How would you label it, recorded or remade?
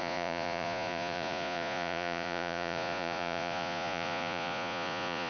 remade